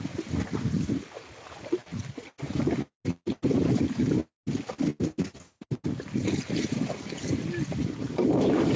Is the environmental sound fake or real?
real